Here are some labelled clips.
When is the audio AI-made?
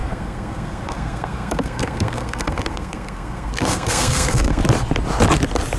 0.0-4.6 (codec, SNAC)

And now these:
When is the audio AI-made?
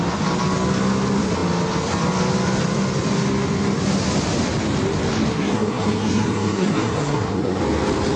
5.3-7.6 (codec, SNAC)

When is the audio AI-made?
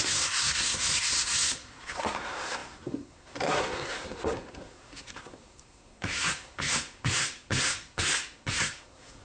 0.0-9.2 (codec, SNAC)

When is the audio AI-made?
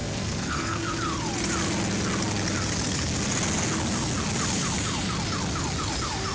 0.0-0.9 (codec, SNAC)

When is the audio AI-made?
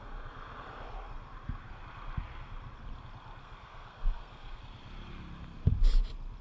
3.4-4.6 (codec, SNAC)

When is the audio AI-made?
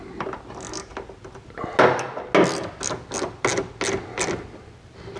none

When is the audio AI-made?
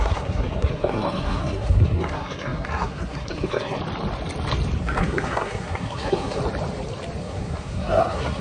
0.0-3.8 (codec, SNAC); 4.8-6.4; 7.2-8.4